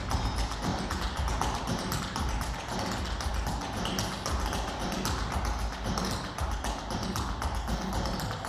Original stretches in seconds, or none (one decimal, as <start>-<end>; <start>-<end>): 0.0-0.7; 2.0-8.5